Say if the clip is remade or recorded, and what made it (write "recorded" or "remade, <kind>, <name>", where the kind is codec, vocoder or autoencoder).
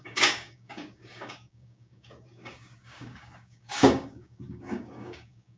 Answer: remade, codec, DAC